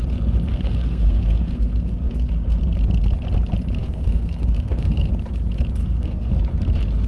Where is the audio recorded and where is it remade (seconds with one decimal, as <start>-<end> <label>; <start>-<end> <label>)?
0.0-0.5 recorded; 0.5-2.6 remade; 2.6-3.8 recorded; 3.8-5.1 remade; 5.1-5.8 recorded; 5.8-6.3 remade; 6.3-7.1 recorded